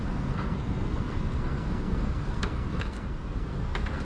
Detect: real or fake fake